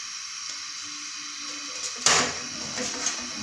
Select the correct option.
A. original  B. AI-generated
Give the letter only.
B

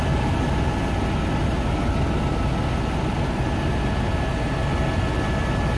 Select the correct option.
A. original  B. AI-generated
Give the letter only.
A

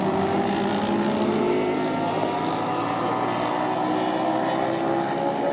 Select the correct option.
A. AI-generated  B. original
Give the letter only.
B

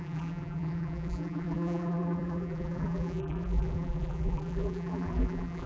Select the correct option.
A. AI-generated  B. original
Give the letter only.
A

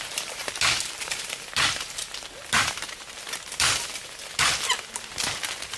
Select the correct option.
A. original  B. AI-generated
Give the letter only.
B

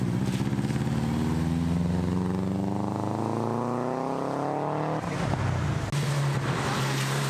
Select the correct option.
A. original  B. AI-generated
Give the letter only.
A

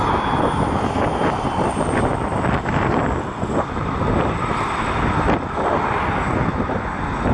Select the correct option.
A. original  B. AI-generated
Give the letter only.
A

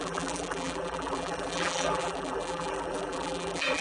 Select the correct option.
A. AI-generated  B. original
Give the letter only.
A